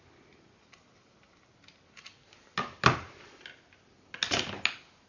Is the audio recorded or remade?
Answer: recorded